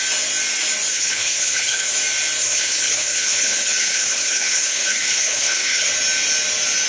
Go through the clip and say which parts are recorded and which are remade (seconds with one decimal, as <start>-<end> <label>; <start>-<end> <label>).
0.0-0.9 recorded; 0.9-1.9 remade; 1.9-2.4 recorded; 2.4-5.9 remade; 5.9-6.9 recorded